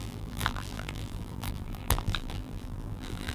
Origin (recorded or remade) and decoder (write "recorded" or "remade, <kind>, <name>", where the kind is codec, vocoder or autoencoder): remade, vocoder, BigVGAN v2